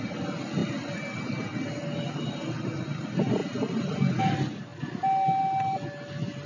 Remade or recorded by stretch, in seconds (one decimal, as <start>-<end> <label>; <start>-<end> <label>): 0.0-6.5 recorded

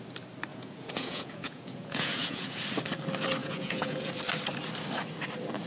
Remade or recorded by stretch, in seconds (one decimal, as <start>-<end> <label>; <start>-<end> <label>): 0.0-0.5 recorded; 0.5-2.6 remade; 2.6-3.4 recorded; 3.4-4.1 remade; 4.1-5.7 recorded

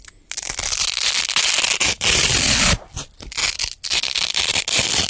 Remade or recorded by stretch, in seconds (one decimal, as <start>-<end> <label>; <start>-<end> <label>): 0.0-5.1 recorded

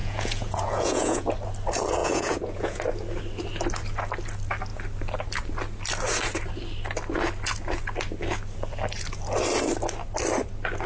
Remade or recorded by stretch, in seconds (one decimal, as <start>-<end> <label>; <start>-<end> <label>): 0.0-1.3 remade; 1.3-2.0 recorded; 2.0-2.8 remade; 2.8-10.9 recorded